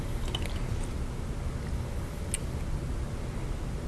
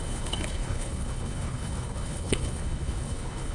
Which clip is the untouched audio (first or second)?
first